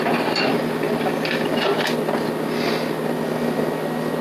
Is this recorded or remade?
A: recorded